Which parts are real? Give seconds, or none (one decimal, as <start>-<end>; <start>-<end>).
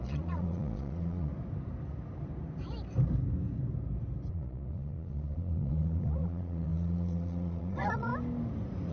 1.3-4.3; 8.1-8.9